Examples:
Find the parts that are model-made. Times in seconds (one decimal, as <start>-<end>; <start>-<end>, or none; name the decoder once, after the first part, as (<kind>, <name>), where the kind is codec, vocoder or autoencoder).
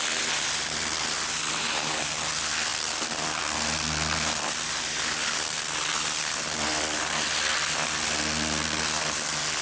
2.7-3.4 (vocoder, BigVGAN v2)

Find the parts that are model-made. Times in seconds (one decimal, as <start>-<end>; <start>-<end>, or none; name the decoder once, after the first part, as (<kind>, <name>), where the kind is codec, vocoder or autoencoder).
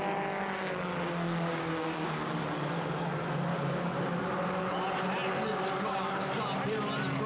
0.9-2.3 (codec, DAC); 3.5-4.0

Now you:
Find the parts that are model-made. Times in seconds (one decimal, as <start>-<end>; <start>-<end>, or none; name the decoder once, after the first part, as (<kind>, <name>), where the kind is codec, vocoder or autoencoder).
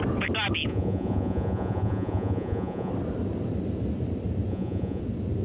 0.7-2.9 (vocoder, Vocos); 4.5-5.0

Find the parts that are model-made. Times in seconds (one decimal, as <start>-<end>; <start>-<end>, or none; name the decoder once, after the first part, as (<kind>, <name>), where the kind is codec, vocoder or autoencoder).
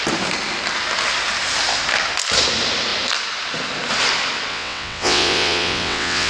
4.5-6.3 (vocoder, WaveNeXt)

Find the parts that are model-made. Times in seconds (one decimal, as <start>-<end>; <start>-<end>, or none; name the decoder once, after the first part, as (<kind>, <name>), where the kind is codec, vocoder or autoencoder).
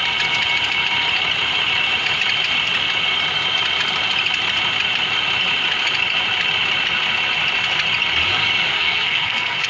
8.7-9.7 (codec, SNAC)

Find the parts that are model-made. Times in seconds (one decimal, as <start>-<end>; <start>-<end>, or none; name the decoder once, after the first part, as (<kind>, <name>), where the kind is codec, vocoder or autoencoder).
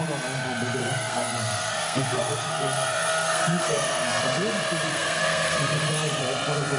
0.8-4.2 (codec, SNAC); 4.9-6.2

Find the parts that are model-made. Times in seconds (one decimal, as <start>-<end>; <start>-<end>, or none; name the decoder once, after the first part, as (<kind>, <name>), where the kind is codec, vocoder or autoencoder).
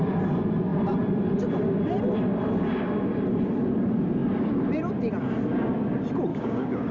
6.3-6.9 (codec, DAC)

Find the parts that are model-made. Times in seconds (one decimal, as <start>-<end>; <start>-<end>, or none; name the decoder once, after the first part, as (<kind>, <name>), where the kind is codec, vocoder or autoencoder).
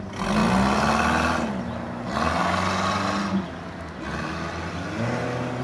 none